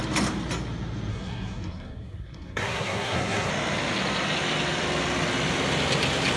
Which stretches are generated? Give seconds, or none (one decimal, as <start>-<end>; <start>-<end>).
1.1-3.5